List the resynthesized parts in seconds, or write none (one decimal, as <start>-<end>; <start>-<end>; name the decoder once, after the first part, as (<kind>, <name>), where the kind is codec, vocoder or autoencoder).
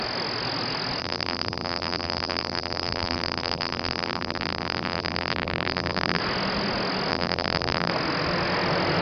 1.0-6.2 (vocoder, BigVGAN v2); 7.1-7.9